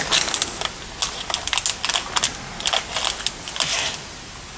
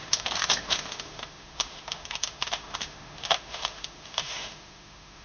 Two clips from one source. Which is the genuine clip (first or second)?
first